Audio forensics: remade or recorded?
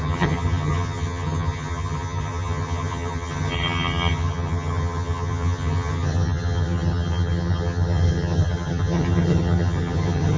remade